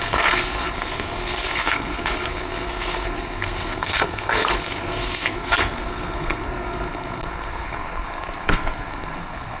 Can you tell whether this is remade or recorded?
remade